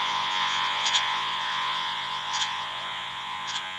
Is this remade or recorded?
remade